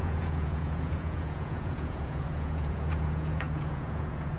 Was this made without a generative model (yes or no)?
no